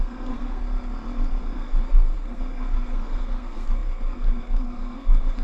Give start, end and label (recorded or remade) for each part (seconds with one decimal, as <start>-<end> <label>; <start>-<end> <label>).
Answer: 0.0-0.6 remade; 0.6-1.4 recorded; 1.4-5.4 remade